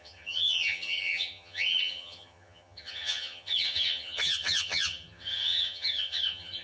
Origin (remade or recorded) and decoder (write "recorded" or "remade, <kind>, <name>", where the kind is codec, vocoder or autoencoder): remade, vocoder, HiFi-GAN